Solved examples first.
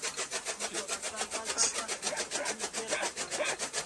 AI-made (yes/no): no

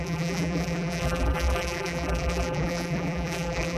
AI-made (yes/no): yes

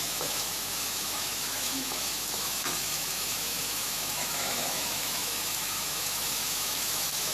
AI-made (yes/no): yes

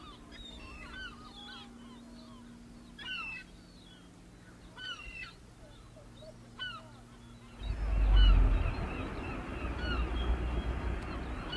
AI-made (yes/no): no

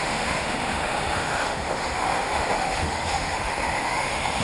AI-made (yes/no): yes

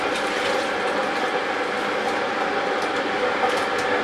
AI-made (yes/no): no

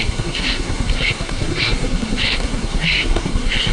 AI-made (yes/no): yes